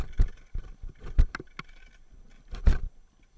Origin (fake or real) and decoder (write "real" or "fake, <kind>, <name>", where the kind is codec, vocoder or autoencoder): real